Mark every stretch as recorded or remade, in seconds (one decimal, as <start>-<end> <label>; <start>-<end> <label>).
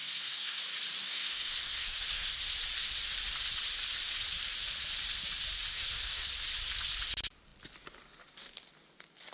0.0-0.6 remade; 0.6-1.0 recorded; 1.0-2.4 remade; 2.4-5.7 recorded; 5.7-6.3 remade; 6.3-9.3 recorded